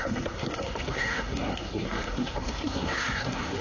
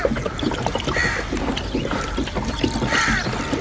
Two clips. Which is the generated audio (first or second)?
first